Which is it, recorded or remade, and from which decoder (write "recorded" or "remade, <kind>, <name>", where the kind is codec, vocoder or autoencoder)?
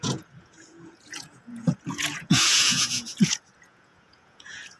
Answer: remade, vocoder, Vocos